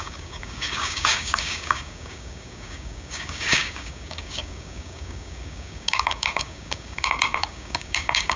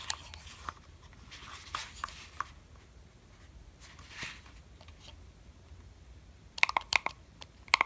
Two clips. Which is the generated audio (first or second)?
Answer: first